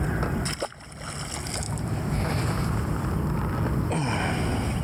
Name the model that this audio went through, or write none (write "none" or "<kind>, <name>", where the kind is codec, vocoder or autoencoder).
none